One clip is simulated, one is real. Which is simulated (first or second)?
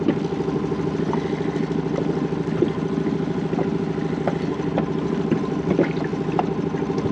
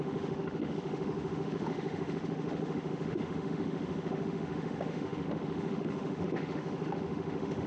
second